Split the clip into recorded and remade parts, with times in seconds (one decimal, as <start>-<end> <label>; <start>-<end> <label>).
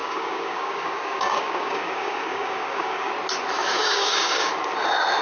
0.0-3.1 remade; 3.1-3.6 recorded; 3.6-4.5 remade; 4.5-5.2 recorded